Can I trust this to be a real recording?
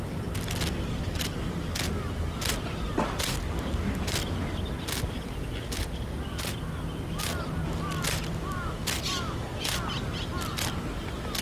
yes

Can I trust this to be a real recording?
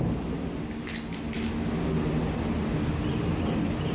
yes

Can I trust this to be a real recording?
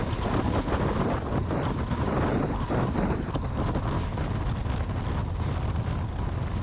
yes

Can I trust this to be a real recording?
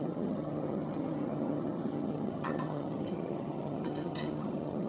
no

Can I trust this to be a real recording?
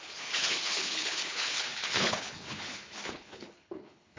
no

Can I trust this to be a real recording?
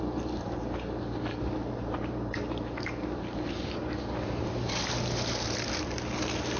no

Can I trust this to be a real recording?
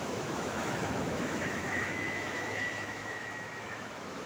no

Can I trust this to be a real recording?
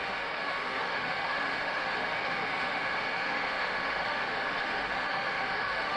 no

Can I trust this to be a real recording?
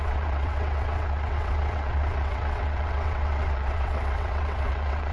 no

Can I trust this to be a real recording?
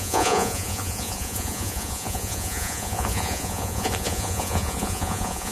no